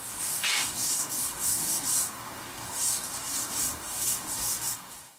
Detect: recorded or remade remade